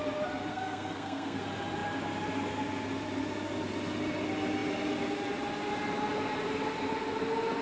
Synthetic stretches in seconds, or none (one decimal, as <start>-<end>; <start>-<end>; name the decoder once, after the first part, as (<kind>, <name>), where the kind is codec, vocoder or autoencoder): 0.5-1.4 (codec, SNAC)